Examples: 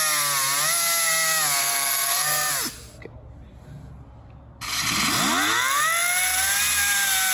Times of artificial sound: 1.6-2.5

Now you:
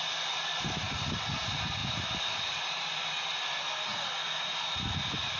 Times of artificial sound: 0.5-1.2; 1.8-3.1

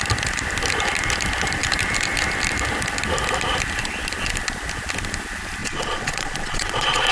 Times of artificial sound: 5.6-7.1

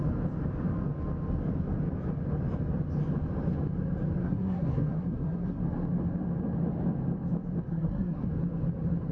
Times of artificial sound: 4.2-5.6; 7.7-8.3

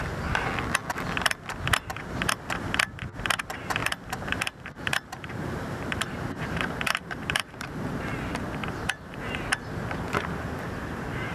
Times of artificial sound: 3.8-7.7; 8.6-9.2

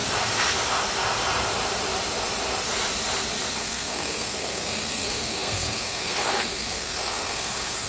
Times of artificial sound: 3.5-7.9